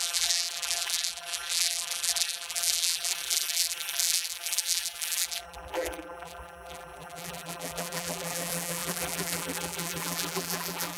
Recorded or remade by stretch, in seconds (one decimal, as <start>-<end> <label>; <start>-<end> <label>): 0.0-11.0 remade